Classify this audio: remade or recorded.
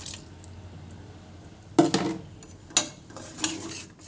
recorded